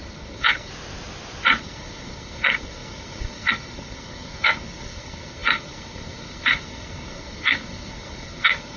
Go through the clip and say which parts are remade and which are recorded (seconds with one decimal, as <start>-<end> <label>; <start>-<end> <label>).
0.0-0.7 remade; 0.7-1.6 recorded; 1.6-8.8 remade